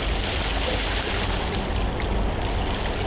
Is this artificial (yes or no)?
no